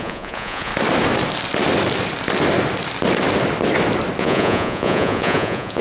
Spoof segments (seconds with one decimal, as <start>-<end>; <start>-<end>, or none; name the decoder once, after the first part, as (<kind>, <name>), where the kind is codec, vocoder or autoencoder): 0.0-0.7 (vocoder, Vocos); 4.2-5.8